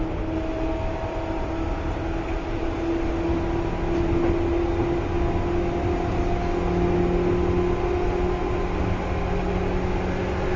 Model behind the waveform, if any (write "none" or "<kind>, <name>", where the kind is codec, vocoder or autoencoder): none